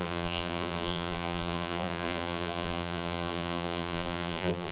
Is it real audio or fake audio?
fake